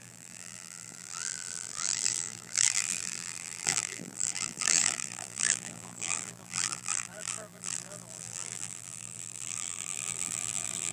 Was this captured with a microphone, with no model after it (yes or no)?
no